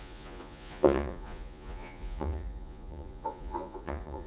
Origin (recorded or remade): remade